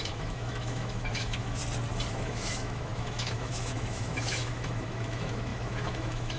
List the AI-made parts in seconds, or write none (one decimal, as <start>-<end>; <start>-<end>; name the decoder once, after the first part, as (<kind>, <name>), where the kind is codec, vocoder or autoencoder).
0.0-1.6 (autoencoder, DAC-VAE); 2.1-6.4